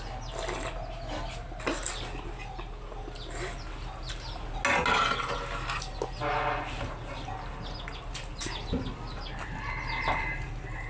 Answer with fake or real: real